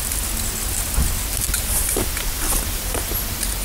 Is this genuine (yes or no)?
no